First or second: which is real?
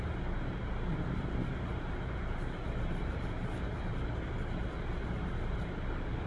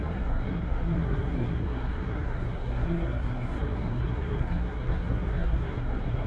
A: first